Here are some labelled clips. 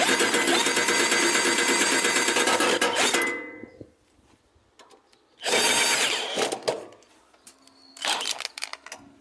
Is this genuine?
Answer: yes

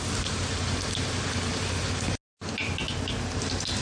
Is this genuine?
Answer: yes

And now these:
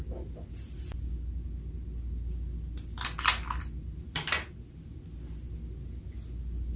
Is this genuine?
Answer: yes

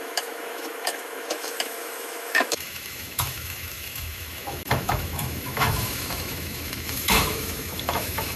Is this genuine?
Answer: no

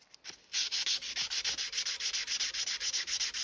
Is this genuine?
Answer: yes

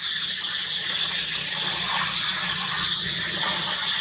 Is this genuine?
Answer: yes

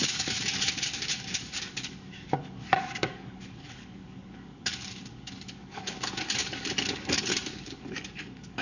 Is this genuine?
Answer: no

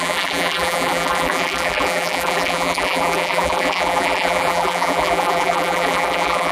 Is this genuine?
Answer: no